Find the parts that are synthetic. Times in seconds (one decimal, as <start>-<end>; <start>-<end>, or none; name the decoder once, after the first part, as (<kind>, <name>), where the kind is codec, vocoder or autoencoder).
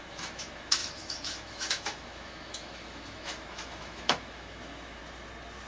0.0-5.0 (autoencoder, DAC-VAE)